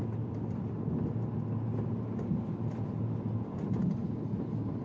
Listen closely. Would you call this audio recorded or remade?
recorded